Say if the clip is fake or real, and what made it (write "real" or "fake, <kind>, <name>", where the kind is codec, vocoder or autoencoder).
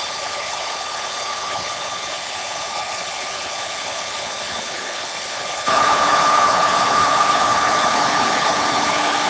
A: fake, codec, HILCodec